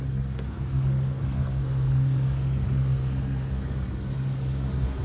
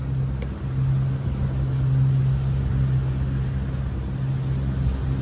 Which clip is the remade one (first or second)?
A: first